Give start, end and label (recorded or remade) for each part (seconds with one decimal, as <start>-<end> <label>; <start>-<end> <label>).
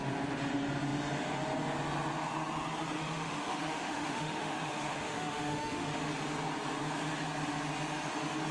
0.0-3.0 recorded; 3.0-6.0 remade; 6.0-8.5 recorded